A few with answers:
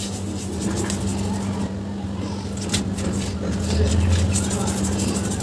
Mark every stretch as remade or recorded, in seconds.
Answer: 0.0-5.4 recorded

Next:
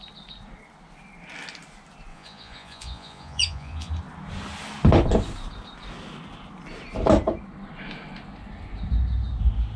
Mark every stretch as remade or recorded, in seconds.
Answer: 0.0-2.1 recorded; 2.1-3.9 remade; 3.9-9.8 recorded

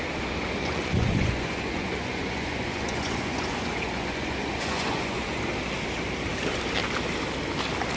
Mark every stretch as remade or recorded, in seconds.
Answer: 0.0-0.6 recorded; 0.6-5.4 remade; 5.4-8.0 recorded

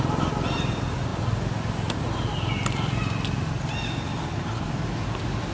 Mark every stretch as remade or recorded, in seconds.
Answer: 0.0-5.5 recorded

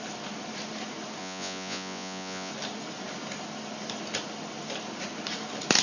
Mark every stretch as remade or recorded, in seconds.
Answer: 0.0-1.2 recorded; 1.2-2.5 remade; 2.5-5.8 recorded